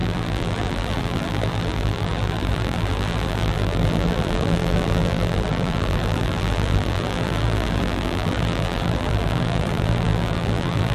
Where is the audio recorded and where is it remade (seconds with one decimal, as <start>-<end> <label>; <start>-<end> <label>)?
0.0-10.9 remade